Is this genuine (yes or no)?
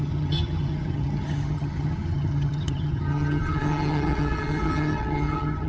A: no